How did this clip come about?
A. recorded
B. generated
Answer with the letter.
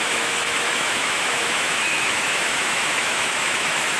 B